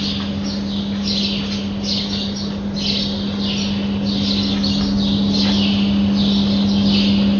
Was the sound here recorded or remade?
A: recorded